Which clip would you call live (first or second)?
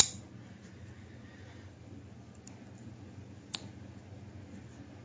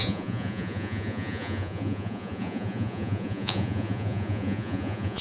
first